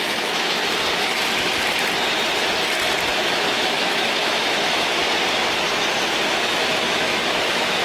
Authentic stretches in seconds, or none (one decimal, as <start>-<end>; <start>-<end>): 0.6-3.2; 5.0-6.4